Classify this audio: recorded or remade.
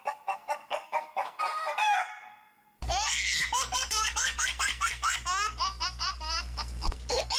remade